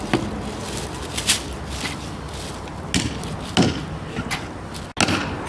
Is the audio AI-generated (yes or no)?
no